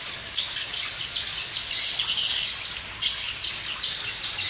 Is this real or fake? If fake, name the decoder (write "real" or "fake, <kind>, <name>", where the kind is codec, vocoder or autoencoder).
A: real